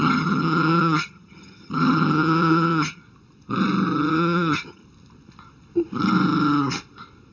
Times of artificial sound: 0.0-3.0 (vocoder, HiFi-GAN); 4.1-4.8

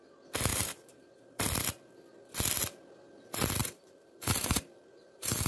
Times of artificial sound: 0.5-1.4 (vocoder, BigVGAN v2); 3.6-5.5

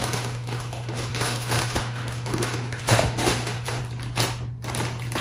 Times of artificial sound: 0.0-3.8 (autoencoder, DAC-VAE)